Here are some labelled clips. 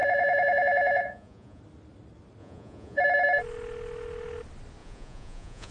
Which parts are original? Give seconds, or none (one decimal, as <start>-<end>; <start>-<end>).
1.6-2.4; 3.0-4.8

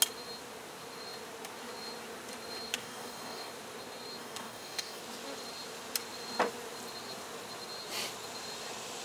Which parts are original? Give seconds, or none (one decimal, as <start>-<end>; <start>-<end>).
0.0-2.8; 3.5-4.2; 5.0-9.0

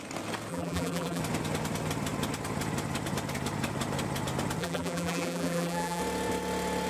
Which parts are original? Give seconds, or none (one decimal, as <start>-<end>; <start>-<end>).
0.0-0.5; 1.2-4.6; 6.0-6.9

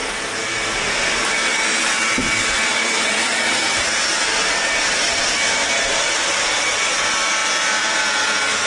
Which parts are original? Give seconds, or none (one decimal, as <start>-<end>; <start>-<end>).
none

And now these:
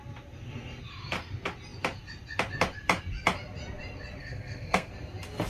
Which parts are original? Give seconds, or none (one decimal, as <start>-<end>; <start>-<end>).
0.0-4.2; 4.9-5.5

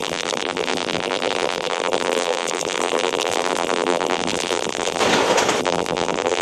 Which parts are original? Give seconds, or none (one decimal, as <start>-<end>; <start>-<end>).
5.0-5.6